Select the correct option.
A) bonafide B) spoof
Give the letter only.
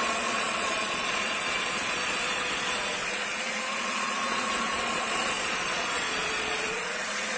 B